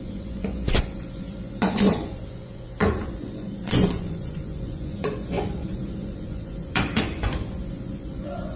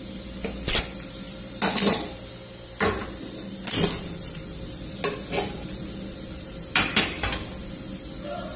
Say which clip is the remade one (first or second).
first